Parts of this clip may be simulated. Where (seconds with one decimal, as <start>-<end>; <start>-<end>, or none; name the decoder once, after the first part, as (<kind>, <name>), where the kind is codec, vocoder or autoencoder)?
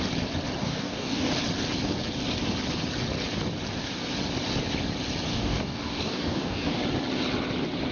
0.6-1.3 (codec, DAC); 5.3-6.8